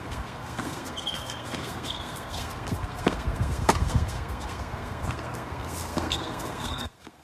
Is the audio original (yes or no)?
no